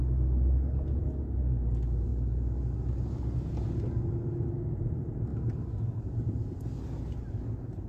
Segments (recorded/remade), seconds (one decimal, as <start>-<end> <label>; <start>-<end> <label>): 0.0-7.9 recorded